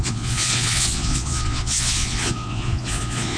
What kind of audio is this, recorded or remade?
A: remade